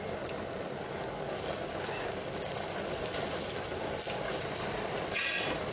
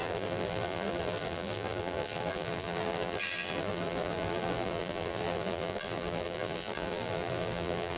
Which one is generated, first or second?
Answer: second